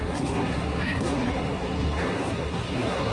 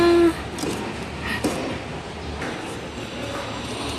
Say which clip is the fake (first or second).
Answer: first